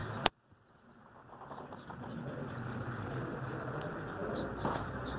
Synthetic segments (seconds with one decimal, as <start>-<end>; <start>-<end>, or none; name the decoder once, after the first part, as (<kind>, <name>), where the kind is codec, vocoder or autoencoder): none